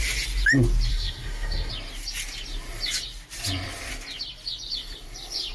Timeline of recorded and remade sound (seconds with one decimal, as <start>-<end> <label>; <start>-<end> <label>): 0.0-0.9 recorded; 0.9-1.7 remade; 1.7-5.5 recorded